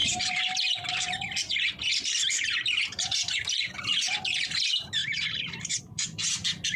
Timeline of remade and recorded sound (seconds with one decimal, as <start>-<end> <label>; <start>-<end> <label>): 0.0-5.0 recorded; 5.0-5.8 remade; 5.8-6.8 recorded